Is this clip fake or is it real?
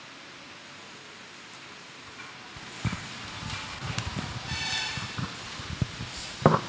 real